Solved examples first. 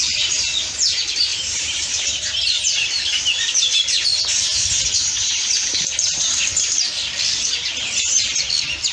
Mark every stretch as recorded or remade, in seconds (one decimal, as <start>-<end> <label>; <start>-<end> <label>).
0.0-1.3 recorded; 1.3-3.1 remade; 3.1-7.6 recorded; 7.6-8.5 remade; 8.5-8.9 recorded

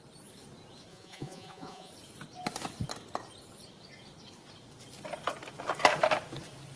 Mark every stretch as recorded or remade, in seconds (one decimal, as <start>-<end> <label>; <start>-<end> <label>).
0.0-0.9 recorded; 0.9-1.9 remade; 1.9-6.8 recorded

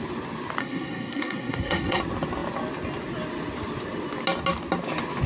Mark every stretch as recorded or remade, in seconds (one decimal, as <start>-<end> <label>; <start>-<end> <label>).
0.0-0.6 recorded; 0.6-2.0 remade; 2.0-5.3 recorded

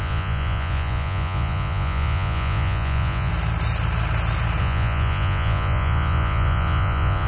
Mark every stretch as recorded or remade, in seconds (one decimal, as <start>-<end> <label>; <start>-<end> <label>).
0.0-3.3 remade; 3.3-4.6 recorded; 4.6-7.3 remade